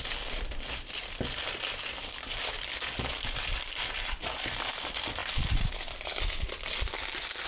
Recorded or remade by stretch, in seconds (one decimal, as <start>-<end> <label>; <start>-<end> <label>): 0.0-7.5 recorded